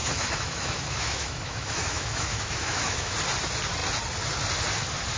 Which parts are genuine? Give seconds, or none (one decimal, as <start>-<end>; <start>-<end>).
3.1-5.2